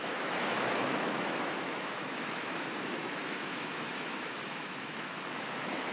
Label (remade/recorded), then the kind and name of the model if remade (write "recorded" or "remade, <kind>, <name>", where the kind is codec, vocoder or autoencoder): remade, autoencoder, DAC-VAE